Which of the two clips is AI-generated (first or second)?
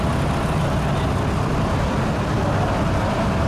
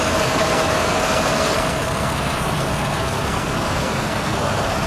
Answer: second